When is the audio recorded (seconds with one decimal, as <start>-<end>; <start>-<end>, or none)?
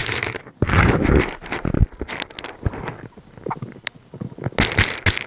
1.8-5.3